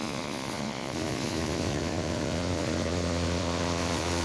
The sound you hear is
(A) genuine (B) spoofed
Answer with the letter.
B